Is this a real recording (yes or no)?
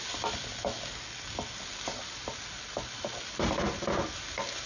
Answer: yes